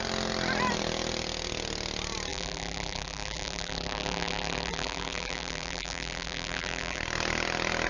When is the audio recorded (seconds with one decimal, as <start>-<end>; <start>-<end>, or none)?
0.0-2.3; 7.0-7.9